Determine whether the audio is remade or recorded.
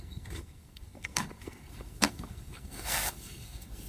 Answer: remade